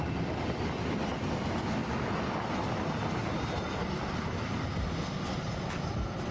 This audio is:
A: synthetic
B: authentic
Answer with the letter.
B